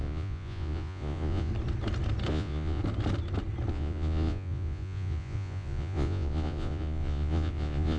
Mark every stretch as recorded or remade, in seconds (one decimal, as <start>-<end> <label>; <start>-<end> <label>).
0.0-1.5 remade; 1.5-2.3 recorded; 2.3-2.8 remade; 2.8-3.7 recorded; 3.7-8.0 remade